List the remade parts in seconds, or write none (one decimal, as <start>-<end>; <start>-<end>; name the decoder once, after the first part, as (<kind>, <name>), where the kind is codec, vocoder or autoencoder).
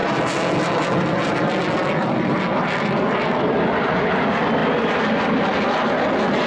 none